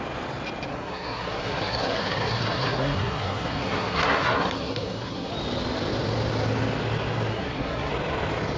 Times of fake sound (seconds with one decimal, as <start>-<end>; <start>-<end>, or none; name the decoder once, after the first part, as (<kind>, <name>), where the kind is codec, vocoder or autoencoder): 0.7-5.3 (codec, SNAC); 7.3-7.9